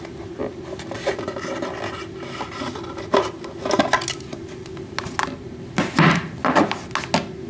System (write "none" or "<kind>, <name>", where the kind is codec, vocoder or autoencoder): none